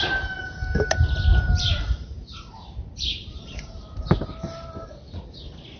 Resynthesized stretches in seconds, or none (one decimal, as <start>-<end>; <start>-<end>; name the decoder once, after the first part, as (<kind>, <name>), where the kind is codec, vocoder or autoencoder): 1.3-2.5 (vocoder, BigVGAN v2); 3.2-4.2